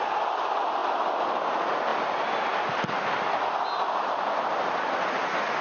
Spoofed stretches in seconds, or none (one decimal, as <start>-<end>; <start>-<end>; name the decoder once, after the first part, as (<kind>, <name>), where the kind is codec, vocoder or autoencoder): none